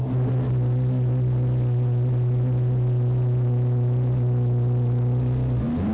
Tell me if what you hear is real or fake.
real